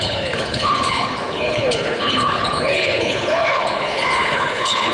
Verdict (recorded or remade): remade